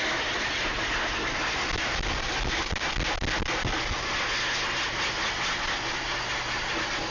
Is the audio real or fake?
real